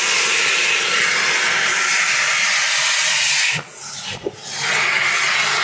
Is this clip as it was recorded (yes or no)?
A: yes